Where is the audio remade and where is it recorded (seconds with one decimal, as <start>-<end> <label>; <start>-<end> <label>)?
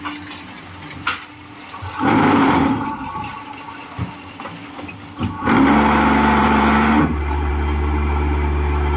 0.0-6.4 recorded; 6.4-7.5 remade; 7.5-9.0 recorded